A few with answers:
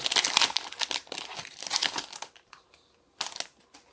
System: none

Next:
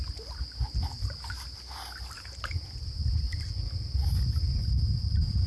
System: none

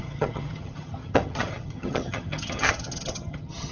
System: vocoder, HiFi-GAN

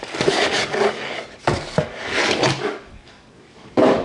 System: codec, DAC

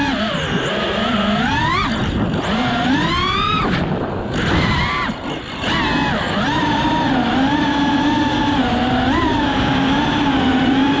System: none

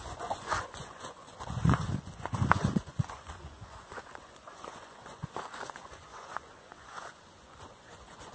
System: vocoder, Vocos